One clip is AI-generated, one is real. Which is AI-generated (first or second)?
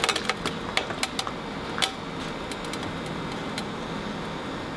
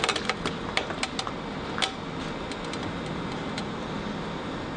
second